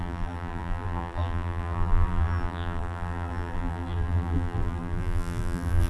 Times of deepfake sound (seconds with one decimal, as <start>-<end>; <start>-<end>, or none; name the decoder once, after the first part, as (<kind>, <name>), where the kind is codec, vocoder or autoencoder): 0.0-5.9 (vocoder, BigVGAN v2)